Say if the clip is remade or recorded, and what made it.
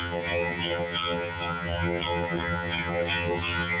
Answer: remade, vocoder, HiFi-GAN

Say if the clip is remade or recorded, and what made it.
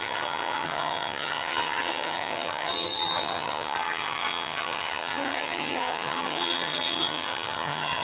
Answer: remade, vocoder, HiFi-GAN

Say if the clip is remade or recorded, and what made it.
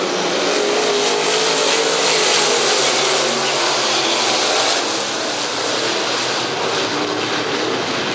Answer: recorded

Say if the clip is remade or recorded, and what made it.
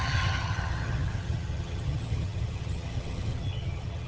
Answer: remade, vocoder, HiFi-GAN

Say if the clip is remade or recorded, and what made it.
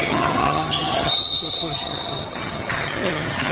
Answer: remade, vocoder, HiFi-GAN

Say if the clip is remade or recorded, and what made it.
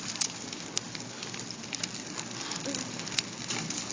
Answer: recorded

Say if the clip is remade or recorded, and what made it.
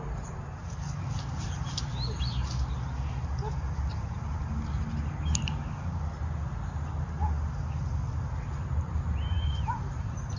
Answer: recorded